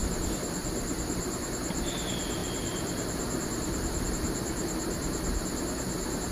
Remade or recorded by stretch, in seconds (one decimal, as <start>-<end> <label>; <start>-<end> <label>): 0.0-2.4 recorded; 2.4-4.1 remade; 4.1-6.3 recorded